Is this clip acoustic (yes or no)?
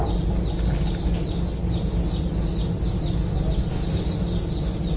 yes